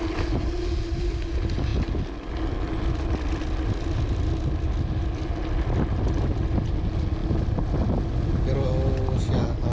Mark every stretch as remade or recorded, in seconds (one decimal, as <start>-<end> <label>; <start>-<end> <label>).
0.0-9.7 recorded